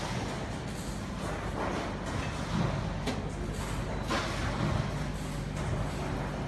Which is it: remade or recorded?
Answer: recorded